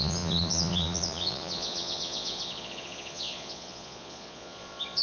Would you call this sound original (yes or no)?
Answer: no